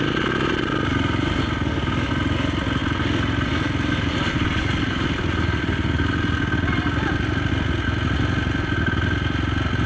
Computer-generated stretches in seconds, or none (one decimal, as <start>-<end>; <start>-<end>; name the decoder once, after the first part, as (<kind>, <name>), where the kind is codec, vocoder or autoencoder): 2.8-7.5 (vocoder, BigVGAN v2)